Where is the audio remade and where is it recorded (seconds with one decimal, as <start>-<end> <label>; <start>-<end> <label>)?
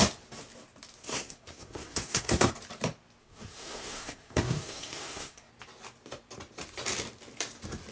0.0-1.0 recorded; 1.0-2.5 remade; 2.5-3.2 recorded; 3.2-5.5 remade; 5.5-7.9 recorded